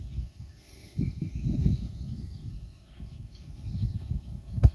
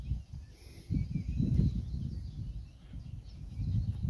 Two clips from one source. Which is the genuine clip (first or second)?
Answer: second